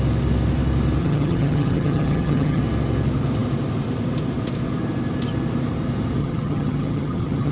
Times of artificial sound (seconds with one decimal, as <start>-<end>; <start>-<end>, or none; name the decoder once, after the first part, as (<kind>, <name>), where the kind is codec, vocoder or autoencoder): 1.0-2.6 (vocoder, HiFi-GAN); 6.2-7.5